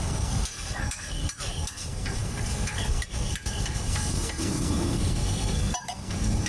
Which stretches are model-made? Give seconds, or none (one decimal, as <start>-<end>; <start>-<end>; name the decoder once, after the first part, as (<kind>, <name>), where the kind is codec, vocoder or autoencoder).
0.0-6.5 (codec, SNAC)